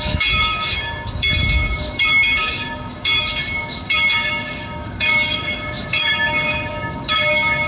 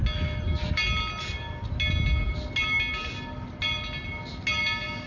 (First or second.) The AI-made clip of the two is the first